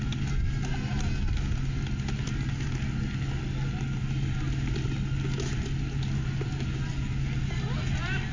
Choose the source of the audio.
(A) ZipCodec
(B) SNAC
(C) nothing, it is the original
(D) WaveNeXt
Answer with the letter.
C